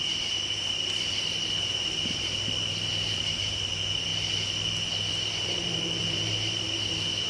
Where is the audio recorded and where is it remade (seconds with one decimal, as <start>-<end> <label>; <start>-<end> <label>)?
0.0-4.1 remade; 4.1-5.1 recorded; 5.1-7.3 remade